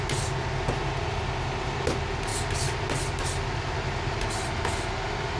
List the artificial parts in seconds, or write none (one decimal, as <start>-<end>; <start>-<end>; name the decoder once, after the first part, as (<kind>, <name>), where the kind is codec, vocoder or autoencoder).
none

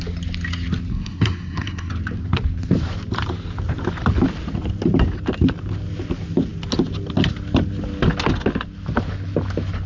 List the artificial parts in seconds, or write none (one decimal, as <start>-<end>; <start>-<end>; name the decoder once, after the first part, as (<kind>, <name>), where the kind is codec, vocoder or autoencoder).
0.9-1.9 (codec, SNAC)

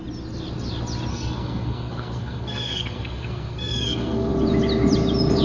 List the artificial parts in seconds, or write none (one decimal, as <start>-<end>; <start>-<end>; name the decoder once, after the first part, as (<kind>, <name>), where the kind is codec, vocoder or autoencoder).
1.1-4.3 (codec, SNAC)

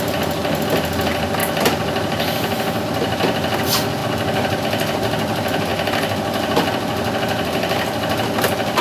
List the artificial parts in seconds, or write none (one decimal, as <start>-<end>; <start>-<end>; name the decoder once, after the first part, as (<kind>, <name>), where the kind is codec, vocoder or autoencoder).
none

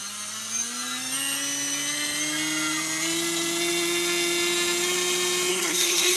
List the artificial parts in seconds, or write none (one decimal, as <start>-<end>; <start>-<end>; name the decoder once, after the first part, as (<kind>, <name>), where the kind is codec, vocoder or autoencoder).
5.5-6.2 (codec, SNAC)

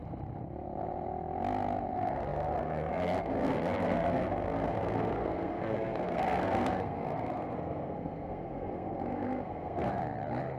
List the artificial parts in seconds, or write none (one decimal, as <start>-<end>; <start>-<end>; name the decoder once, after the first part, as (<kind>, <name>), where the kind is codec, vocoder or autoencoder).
1.9-10.0 (codec, SNAC)